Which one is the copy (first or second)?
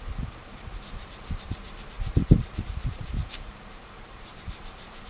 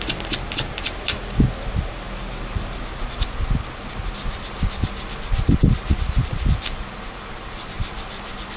first